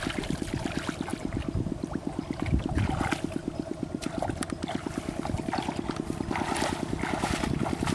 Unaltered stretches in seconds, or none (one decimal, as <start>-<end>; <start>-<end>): 0.0-1.1; 5.4-7.9